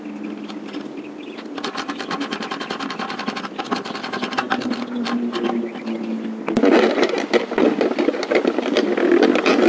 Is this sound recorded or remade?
recorded